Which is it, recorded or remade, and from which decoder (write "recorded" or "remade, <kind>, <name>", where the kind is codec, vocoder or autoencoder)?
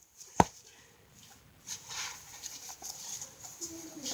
remade, vocoder, BigVGAN v2